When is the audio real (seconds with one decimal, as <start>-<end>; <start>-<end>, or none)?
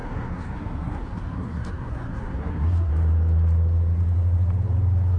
2.9-5.2